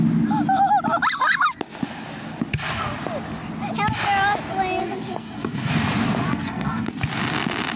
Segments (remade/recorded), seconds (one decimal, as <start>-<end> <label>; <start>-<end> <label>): 0.0-4.8 recorded; 4.8-5.7 remade; 5.7-6.3 recorded; 6.3-6.9 remade; 6.9-7.8 recorded